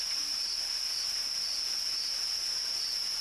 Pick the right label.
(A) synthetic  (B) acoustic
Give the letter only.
B